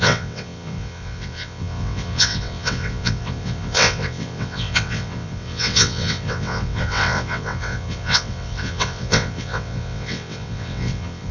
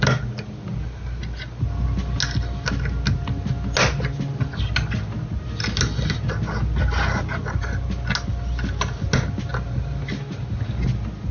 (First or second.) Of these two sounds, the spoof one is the first